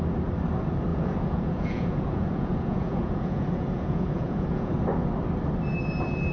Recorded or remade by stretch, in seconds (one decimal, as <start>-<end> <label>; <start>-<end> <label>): 0.0-0.9 recorded; 0.9-4.7 remade; 4.7-6.3 recorded